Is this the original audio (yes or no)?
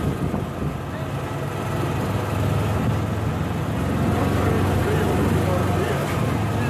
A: yes